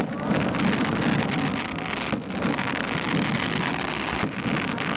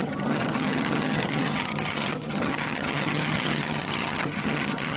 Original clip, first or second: first